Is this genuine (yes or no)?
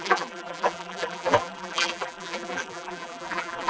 no